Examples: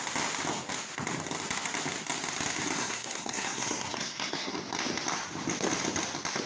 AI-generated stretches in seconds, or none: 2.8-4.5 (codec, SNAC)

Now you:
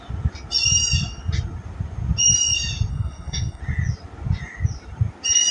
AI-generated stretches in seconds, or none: 2.9-3.6 (codec, SNAC)

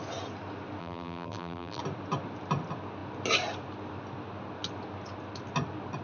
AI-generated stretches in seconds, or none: 0.8-1.8 (vocoder, BigVGAN v2)

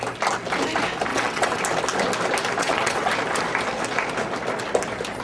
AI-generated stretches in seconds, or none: 1.1-1.6 (vocoder, WaveNeXt); 2.6-3.1

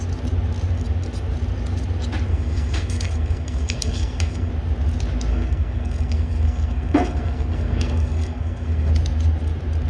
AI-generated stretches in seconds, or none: 2.3-4.5 (codec, SNAC); 5.3-8.9

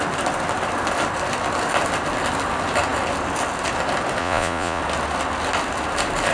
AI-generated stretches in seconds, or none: 4.2-4.8 (vocoder, Vocos)

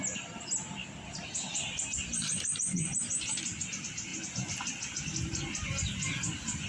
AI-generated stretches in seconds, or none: 0.8-1.5 (vocoder, BigVGAN v2)

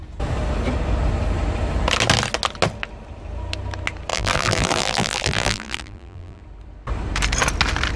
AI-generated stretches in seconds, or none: 4.1-6.4 (vocoder, BigVGAN v2)